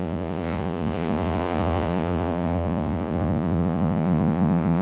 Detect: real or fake fake